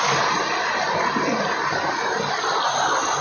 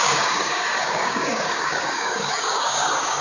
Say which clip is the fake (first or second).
second